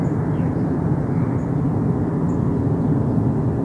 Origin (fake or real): real